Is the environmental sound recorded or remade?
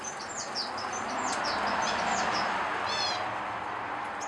recorded